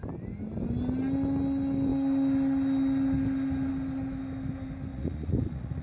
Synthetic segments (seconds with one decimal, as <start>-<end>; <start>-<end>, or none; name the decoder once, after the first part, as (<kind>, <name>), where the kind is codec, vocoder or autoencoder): 4.9-5.8 (vocoder, Vocos)